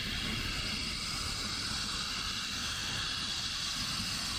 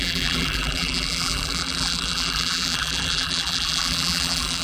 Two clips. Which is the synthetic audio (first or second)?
second